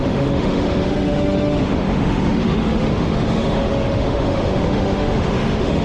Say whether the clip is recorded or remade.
remade